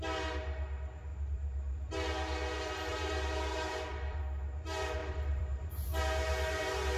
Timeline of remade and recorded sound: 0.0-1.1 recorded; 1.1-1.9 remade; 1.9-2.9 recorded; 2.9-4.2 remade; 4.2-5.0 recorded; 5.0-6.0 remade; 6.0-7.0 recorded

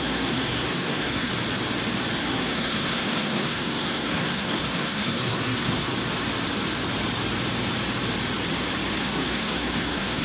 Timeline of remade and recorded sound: 0.0-1.3 remade; 1.3-2.2 recorded; 2.2-5.9 remade; 5.9-9.0 recorded; 9.0-10.2 remade